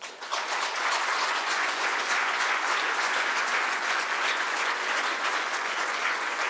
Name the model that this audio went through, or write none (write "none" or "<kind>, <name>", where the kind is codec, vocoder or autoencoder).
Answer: vocoder, Vocos